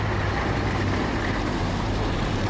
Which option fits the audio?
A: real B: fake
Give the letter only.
B